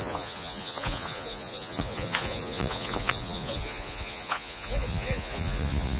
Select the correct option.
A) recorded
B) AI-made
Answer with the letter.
B